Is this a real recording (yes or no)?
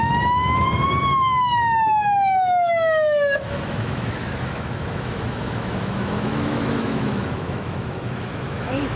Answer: no